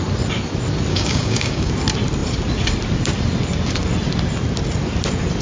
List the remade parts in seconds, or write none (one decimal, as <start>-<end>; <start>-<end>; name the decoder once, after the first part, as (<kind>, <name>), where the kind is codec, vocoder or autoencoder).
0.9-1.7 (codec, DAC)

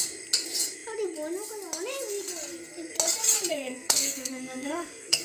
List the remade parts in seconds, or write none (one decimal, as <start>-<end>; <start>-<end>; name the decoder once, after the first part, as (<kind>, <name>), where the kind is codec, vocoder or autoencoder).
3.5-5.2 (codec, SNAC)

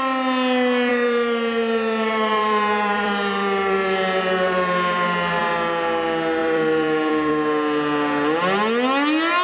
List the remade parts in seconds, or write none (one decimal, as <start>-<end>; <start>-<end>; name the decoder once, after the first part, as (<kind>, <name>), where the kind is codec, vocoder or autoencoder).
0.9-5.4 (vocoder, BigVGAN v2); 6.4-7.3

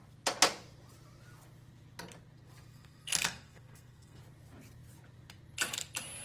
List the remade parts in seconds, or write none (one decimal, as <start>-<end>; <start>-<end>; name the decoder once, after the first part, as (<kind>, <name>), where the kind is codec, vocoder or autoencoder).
2.7-4.2 (codec, SNAC)

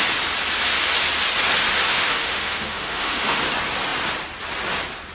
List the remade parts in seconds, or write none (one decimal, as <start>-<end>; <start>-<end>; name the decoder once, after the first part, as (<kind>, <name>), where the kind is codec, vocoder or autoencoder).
1.9-3.4 (autoencoder, DAC-VAE)

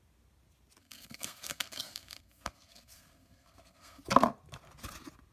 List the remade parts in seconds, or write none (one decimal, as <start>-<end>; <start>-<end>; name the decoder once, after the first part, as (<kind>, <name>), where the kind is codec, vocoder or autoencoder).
0.8-4.0 (codec, SNAC)